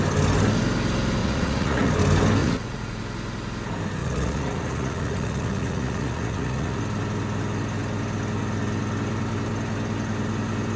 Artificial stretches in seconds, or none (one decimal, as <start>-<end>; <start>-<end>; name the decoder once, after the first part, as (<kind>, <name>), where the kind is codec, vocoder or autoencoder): 1.2-1.9 (vocoder, Vocos); 2.4-3.0; 4.0-6.8